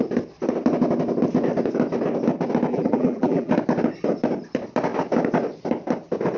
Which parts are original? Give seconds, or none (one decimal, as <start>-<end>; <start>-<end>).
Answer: 0.0-2.7; 3.5-6.4